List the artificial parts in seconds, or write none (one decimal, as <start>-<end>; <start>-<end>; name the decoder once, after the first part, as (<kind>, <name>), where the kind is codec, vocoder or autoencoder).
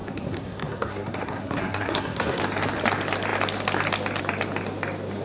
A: 0.0-2.4 (codec, SNAC)